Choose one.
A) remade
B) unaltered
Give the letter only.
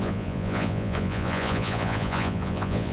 A